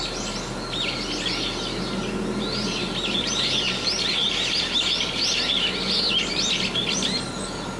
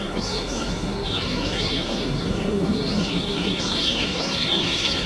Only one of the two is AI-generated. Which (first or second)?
second